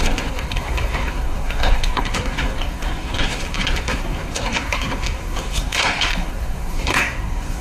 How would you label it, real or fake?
fake